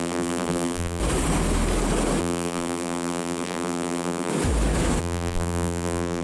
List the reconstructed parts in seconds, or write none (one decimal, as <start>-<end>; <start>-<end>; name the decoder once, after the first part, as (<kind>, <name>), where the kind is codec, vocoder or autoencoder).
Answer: 0.0-1.0 (vocoder, BigVGAN v2); 2.2-4.3; 5.0-6.2